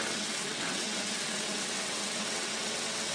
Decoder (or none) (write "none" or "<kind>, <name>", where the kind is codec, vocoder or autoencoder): vocoder, WaveNeXt